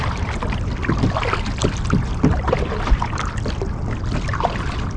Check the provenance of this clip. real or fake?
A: real